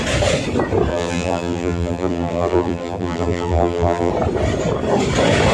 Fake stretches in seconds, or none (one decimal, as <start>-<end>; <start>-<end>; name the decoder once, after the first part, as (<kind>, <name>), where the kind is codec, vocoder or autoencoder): 0.9-4.1 (vocoder, BigVGAN v2)